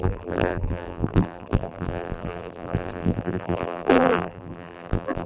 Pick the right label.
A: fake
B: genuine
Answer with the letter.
A